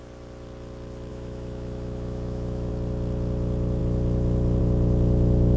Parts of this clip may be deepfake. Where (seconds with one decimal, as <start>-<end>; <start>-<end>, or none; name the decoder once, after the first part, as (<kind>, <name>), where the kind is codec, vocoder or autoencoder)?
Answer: 1.1-2.7 (autoencoder, DAC-VAE)